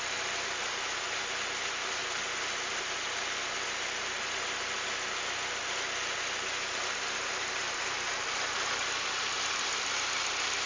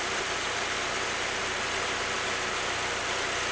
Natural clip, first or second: first